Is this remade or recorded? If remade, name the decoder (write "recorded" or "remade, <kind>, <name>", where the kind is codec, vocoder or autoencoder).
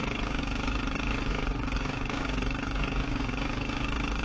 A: remade, codec, DAC